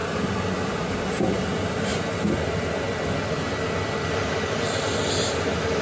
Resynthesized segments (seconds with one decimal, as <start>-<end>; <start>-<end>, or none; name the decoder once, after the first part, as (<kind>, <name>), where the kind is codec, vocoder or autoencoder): none